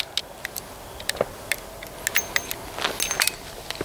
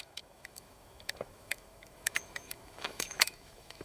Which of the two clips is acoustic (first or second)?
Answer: first